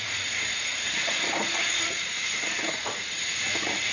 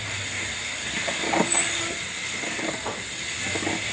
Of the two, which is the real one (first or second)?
second